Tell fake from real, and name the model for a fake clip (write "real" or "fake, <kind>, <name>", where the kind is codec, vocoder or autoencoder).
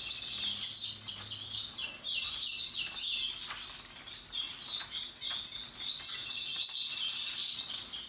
real